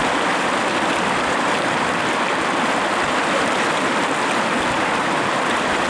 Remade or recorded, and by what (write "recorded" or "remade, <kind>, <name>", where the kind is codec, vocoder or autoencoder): recorded